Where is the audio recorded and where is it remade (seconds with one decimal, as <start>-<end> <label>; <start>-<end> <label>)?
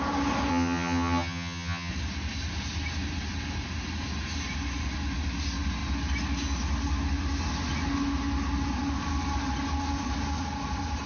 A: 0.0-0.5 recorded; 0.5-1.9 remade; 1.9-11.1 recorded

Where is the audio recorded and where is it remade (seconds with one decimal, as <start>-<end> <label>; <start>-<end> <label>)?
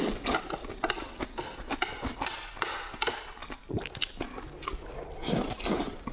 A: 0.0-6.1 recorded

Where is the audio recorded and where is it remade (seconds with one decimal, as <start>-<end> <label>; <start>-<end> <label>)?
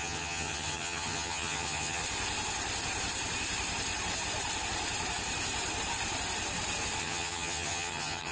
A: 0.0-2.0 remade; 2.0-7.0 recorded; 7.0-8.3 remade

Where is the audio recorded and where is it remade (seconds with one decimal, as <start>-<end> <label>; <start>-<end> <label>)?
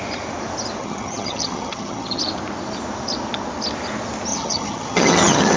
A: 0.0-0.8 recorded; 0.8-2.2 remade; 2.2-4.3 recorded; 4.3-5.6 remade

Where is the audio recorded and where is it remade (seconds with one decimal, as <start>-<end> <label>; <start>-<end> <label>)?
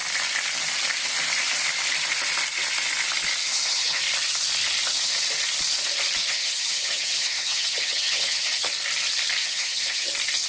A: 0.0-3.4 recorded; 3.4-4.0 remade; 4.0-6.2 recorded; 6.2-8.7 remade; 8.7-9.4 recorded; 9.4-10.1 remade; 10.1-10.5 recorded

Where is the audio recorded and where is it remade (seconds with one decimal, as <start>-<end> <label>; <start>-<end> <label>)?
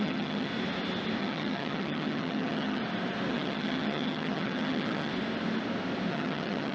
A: 0.0-0.5 remade; 0.5-1.2 recorded; 1.2-2.8 remade; 2.8-3.3 recorded; 3.3-5.1 remade; 5.1-6.1 recorded; 6.1-6.7 remade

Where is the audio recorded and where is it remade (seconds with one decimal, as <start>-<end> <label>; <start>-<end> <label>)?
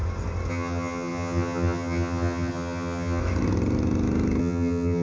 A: 0.0-0.5 recorded; 0.5-3.2 remade; 3.2-4.4 recorded; 4.4-5.0 remade